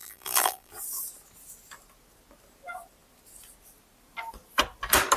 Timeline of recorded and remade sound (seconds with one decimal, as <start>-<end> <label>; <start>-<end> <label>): 0.0-0.7 remade; 0.7-5.2 recorded

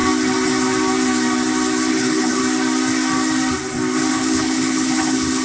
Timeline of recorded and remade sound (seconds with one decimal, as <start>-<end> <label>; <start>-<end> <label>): 0.0-1.9 recorded; 1.9-2.4 remade; 2.4-4.1 recorded; 4.1-5.4 remade